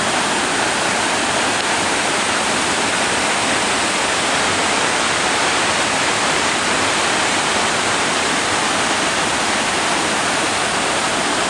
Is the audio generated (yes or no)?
no